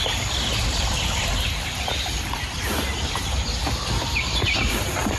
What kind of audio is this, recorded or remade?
recorded